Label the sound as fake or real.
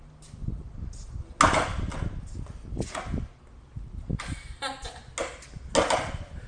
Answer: real